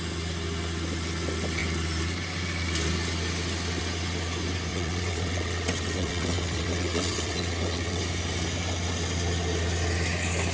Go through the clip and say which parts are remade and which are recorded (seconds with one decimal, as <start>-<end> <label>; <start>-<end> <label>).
0.0-4.7 recorded; 4.7-8.0 remade; 8.0-10.5 recorded